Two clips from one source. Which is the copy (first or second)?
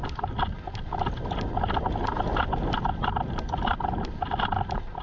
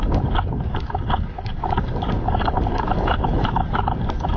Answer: second